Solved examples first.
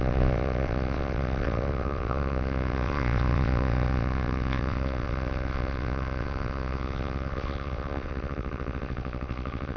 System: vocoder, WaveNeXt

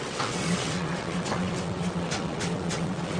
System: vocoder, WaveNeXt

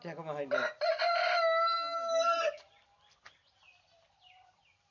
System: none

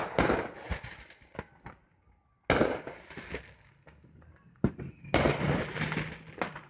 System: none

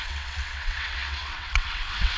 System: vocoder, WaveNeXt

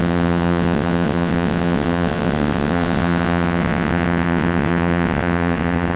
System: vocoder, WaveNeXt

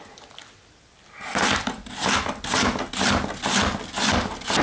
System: none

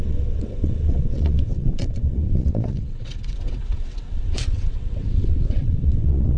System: vocoder, WaveNeXt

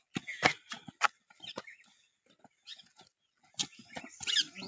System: none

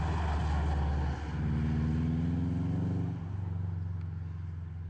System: none